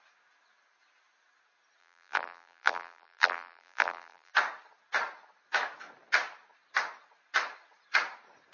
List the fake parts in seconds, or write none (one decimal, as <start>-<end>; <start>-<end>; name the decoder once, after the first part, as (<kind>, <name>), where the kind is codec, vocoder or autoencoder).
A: 1.8-4.3 (vocoder, BigVGAN v2)